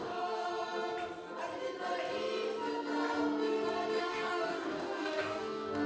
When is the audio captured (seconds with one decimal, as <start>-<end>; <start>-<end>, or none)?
0.5-4.0